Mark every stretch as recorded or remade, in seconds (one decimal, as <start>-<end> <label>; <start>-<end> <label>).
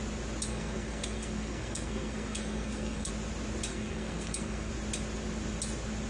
0.0-0.5 recorded; 0.5-3.1 remade; 3.1-3.7 recorded; 3.7-4.7 remade; 4.7-6.1 recorded